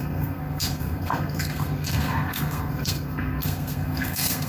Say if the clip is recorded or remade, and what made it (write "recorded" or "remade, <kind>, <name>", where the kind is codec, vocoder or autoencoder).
remade, codec, SNAC